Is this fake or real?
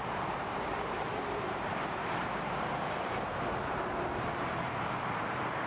fake